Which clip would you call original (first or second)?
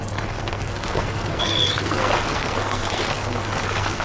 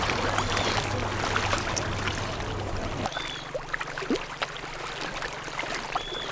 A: second